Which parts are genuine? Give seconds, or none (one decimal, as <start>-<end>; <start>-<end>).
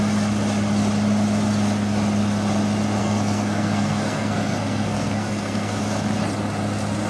0.0-3.0; 5.8-7.1